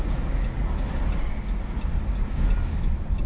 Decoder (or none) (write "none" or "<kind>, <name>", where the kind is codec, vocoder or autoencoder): none